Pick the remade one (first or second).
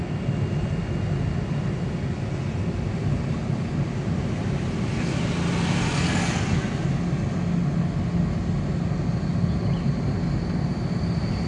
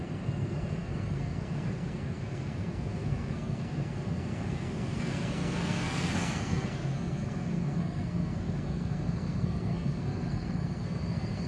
second